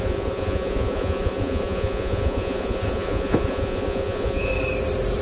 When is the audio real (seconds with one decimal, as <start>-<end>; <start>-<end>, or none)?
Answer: 4.5-5.2